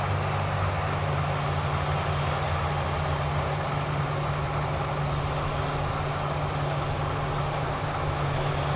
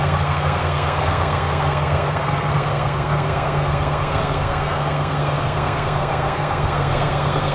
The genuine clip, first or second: first